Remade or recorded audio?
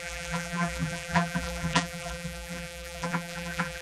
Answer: remade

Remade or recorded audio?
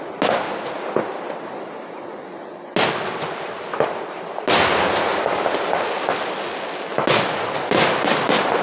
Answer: recorded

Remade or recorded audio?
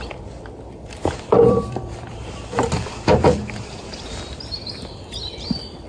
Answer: remade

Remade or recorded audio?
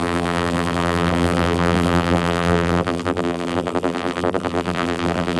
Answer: remade